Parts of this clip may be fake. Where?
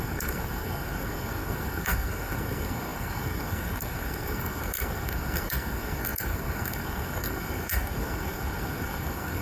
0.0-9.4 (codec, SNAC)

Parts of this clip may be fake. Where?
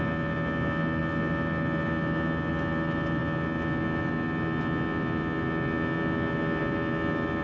none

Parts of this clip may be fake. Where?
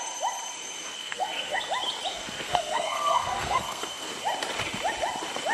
0.9-1.6 (codec, SNAC); 2.1-4.1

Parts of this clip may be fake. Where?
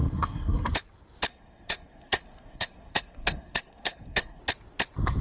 0.0-0.7 (codec, SNAC); 1.3-4.4